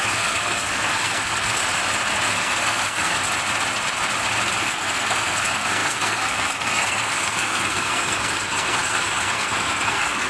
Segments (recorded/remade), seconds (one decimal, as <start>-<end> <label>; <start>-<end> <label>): 0.0-1.6 remade; 1.6-2.3 recorded; 2.3-3.2 remade; 3.2-4.6 recorded; 4.6-10.3 remade